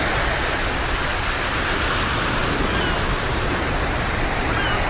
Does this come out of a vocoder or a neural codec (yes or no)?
no